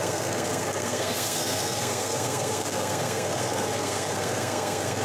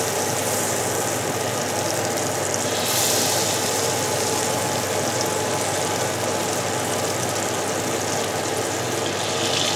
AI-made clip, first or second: first